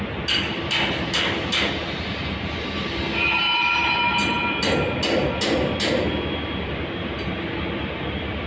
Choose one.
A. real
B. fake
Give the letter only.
A